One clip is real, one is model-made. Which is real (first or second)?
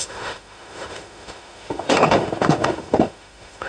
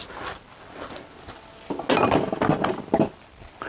second